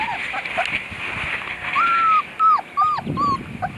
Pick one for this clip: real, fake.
real